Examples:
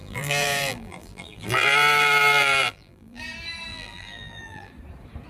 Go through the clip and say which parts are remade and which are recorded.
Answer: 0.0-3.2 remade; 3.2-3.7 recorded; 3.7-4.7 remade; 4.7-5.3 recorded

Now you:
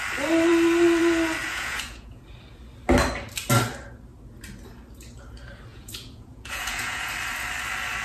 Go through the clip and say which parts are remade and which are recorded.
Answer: 0.0-1.4 recorded; 1.4-2.2 remade; 2.2-5.7 recorded; 5.7-7.1 remade; 7.1-8.0 recorded

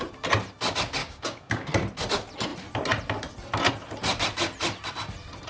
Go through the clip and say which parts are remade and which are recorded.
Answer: 0.0-1.0 recorded; 1.0-1.7 remade; 1.7-5.5 recorded

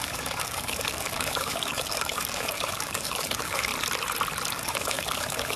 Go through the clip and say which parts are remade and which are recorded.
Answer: 0.0-3.7 remade; 3.7-4.5 recorded; 4.5-5.6 remade